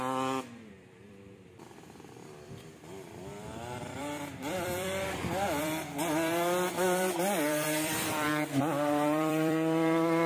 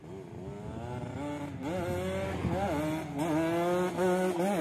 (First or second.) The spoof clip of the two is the first